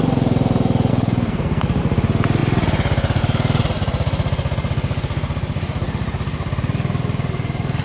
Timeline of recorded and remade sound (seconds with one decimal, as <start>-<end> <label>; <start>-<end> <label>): 0.0-0.9 recorded; 0.9-1.8 remade; 1.8-7.8 recorded